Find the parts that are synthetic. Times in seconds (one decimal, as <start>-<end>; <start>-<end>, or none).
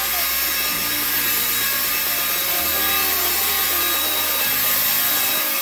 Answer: none